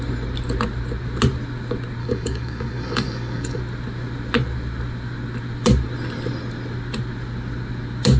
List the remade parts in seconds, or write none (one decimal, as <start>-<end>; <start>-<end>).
2.0-3.6